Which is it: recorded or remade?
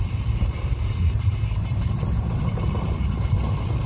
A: remade